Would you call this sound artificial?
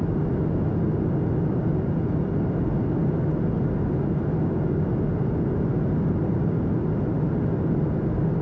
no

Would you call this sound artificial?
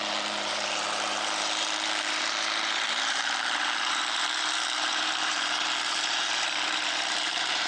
yes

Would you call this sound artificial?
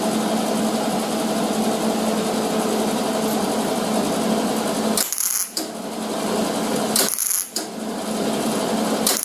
no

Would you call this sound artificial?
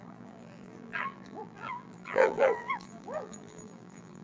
yes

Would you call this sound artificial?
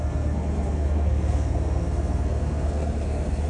yes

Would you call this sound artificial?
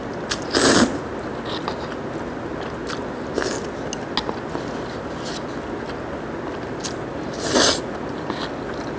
no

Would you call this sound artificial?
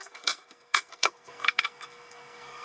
yes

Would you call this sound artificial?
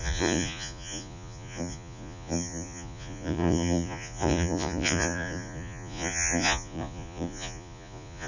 yes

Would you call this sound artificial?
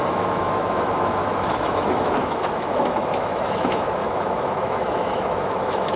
yes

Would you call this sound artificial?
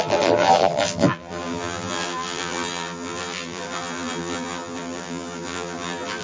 yes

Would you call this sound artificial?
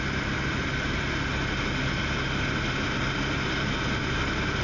no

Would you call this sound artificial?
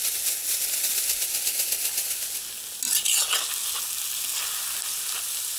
no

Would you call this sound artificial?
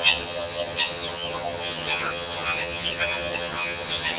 yes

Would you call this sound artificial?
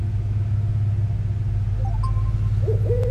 no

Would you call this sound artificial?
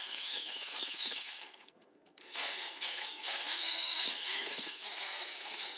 yes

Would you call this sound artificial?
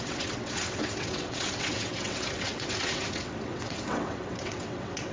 yes